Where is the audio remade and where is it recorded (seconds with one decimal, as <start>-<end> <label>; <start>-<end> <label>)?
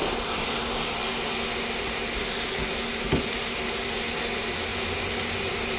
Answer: 0.0-5.8 recorded